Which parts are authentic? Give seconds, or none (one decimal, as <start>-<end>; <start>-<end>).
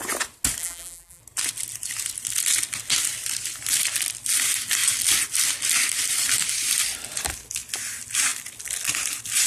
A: 0.0-0.6; 1.2-9.5